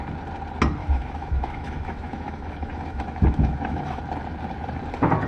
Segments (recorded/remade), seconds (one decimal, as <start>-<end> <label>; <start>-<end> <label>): 0.0-0.8 recorded; 0.8-4.0 remade; 4.0-5.3 recorded